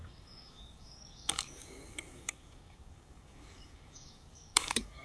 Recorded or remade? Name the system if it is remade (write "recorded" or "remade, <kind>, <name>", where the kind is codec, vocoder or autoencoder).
remade, codec, DAC